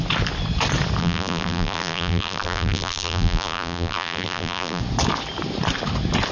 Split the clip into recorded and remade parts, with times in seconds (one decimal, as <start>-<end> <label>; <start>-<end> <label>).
0.0-1.0 recorded; 1.0-4.8 remade; 4.8-6.3 recorded